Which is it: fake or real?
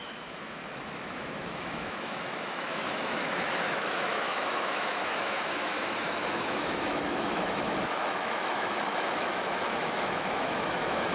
fake